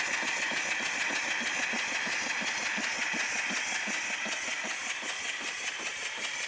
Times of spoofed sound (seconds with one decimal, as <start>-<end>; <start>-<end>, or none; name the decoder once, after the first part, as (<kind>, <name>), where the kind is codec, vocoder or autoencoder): none